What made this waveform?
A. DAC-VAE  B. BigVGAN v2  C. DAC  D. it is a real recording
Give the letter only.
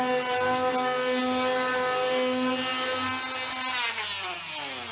D